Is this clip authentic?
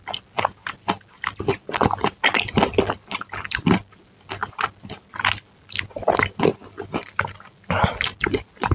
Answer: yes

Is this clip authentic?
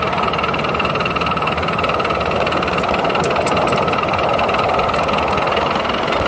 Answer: yes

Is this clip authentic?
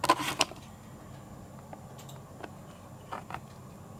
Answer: yes